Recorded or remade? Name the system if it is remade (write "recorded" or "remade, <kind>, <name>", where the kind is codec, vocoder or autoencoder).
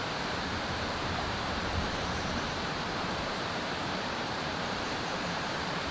remade, vocoder, BigVGAN v2